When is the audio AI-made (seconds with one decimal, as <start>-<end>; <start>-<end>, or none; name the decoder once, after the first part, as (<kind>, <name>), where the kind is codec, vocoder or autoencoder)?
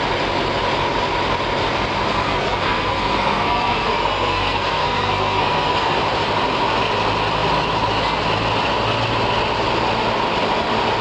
2.1-6.0 (codec, SNAC)